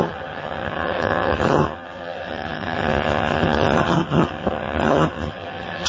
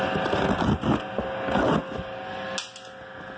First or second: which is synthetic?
first